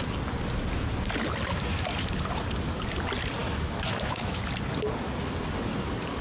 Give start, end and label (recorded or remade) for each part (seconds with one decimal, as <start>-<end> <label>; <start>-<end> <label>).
0.0-3.4 recorded; 3.4-4.3 remade; 4.3-6.2 recorded